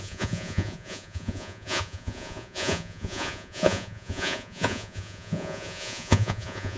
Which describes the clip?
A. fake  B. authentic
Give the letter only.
A